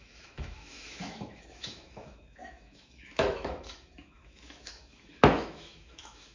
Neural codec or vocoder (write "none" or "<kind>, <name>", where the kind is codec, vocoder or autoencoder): autoencoder, DAC-VAE